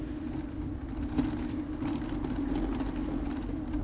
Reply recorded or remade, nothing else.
recorded